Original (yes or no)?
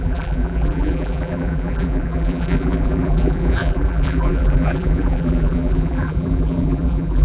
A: no